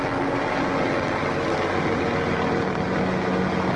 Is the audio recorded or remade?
recorded